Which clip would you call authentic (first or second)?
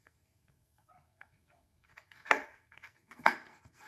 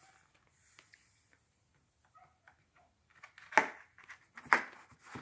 second